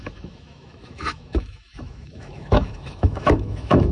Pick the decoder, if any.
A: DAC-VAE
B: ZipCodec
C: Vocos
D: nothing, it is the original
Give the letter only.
A